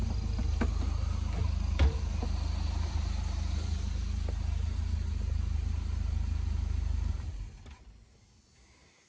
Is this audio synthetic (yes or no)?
no